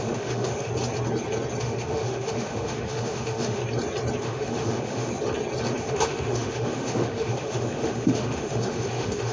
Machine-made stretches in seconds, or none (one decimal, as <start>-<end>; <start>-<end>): 0.0-0.7; 1.6-3.6; 4.2-5.1; 5.8-9.3